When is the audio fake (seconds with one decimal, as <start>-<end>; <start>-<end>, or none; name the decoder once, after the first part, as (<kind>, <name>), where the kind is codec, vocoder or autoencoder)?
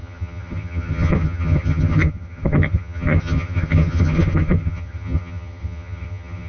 0.0-6.5 (vocoder, HiFi-GAN)